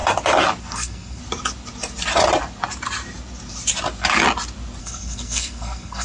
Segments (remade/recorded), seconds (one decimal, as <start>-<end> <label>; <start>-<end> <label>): 0.0-0.6 recorded; 0.6-1.2 remade; 1.2-4.8 recorded; 4.8-6.0 remade